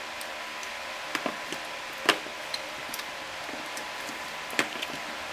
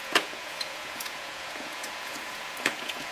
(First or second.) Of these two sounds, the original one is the first